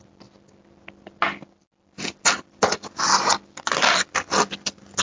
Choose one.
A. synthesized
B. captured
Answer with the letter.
B